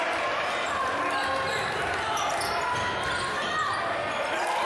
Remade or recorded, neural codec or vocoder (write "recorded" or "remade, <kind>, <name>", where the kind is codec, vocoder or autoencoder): recorded